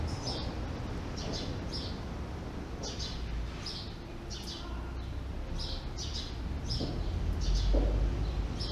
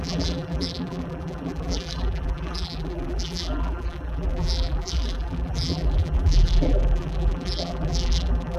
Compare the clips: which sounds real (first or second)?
first